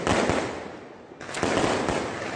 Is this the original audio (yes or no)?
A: yes